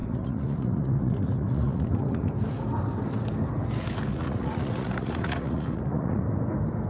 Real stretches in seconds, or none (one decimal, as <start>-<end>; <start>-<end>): 2.3-4.1; 6.3-6.9